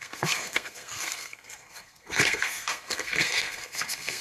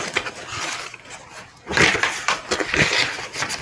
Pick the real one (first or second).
second